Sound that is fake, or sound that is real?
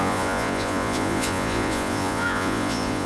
fake